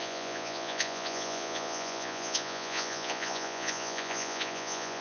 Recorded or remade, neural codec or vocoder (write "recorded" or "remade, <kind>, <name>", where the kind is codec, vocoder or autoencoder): remade, vocoder, Vocos